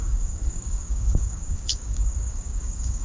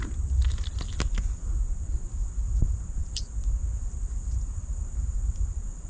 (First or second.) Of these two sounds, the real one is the second